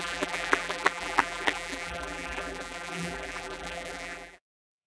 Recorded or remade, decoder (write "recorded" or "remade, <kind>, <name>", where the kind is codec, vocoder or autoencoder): remade, vocoder, BigVGAN v2